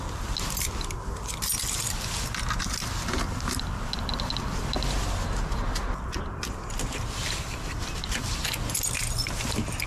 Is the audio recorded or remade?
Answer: recorded